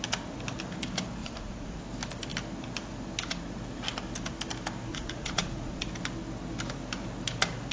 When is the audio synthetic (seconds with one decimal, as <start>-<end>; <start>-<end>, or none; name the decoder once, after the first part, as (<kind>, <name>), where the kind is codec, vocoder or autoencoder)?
1.2-1.8 (vocoder, Vocos); 4.9-5.9